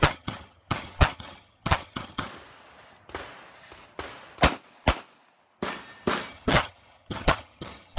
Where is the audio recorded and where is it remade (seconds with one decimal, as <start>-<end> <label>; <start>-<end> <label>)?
0.0-2.3 remade; 2.3-6.3 recorded; 6.3-8.0 remade